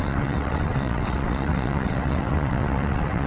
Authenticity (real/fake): fake